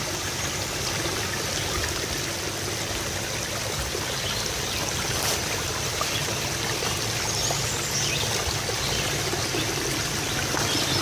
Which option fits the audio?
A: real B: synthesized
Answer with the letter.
A